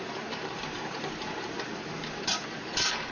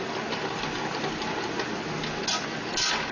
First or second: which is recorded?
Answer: second